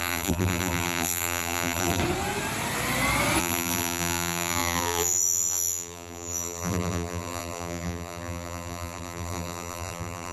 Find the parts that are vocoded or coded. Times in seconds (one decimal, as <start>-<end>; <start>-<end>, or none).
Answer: 0.0-2.0; 3.4-10.3